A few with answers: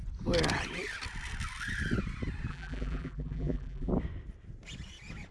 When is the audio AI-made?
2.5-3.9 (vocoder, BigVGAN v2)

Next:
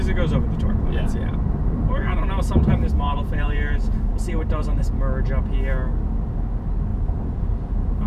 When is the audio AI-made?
1.3-4.8 (vocoder, BigVGAN v2); 6.9-8.1

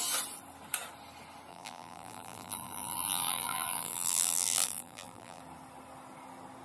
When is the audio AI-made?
1.5-5.4 (vocoder, BigVGAN v2)

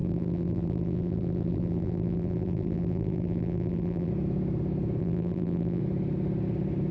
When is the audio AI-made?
0.0-4.1 (vocoder, BigVGAN v2); 5.0-5.8

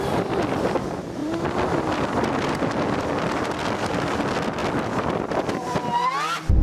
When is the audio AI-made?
none

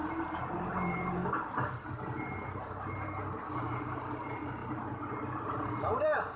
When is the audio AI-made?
0.0-1.2 (vocoder, BigVGAN v2); 3.6-4.6; 5.7-6.4